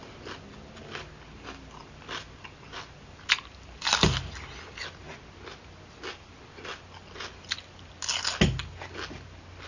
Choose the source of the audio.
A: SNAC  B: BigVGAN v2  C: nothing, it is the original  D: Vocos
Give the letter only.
C